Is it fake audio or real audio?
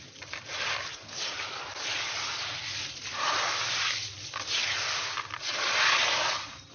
real